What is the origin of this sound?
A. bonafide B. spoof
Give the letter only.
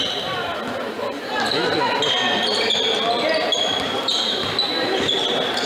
A